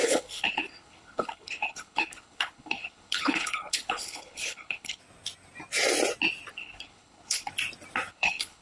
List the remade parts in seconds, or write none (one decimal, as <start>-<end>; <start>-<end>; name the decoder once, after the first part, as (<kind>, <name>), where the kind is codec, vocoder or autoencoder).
0.0-5.0 (codec, HILCodec); 6.5-7.5; 8.1-8.6